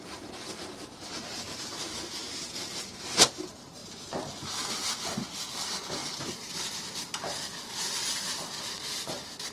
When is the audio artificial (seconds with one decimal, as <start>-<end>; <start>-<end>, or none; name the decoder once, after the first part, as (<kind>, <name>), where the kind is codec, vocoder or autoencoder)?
6.0-6.7 (vocoder, BigVGAN v2)